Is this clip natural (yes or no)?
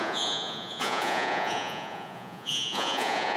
no